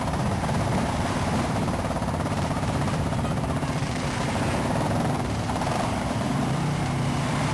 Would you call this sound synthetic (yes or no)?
yes